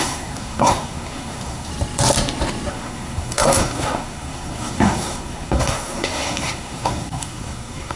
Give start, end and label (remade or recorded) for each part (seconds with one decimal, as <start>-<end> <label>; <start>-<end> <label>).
0.0-1.7 remade; 1.7-2.7 recorded; 2.7-8.0 remade